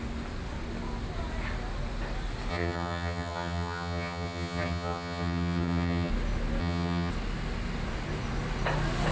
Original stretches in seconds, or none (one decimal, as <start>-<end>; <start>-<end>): 0.0-2.5; 6.1-6.6; 7.1-9.1